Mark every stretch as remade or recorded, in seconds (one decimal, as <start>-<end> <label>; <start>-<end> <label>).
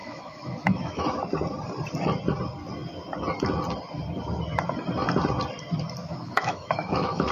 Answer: 0.0-1.2 remade; 1.2-6.0 recorded; 6.0-7.3 remade